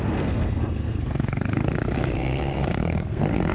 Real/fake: fake